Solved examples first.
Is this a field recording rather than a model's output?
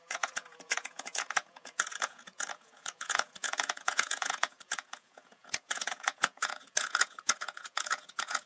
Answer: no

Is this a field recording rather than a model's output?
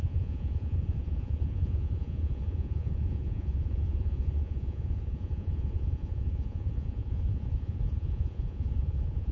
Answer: no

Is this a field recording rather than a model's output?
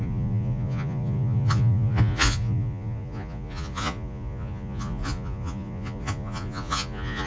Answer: no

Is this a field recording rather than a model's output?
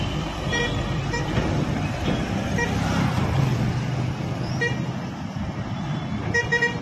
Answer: yes